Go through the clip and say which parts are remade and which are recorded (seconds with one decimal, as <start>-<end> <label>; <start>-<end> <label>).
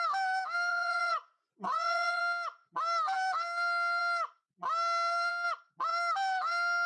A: 0.0-0.7 recorded; 0.7-2.2 remade; 2.2-6.9 recorded